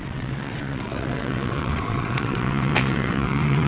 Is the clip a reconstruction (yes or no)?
yes